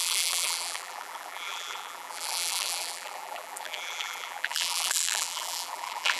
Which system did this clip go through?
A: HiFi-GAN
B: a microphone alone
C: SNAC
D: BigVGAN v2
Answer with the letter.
D